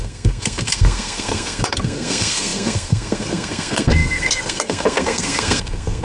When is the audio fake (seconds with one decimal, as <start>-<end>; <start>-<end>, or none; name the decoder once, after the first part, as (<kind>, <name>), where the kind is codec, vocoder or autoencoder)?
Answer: 0.0-6.0 (codec, SNAC)